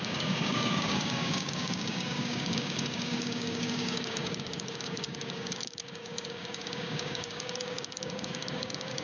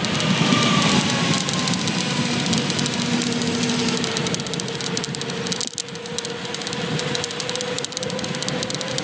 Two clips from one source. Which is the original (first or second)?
second